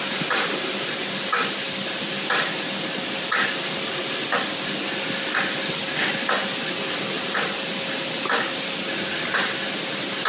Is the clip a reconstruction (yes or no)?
no